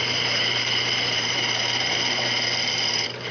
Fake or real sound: fake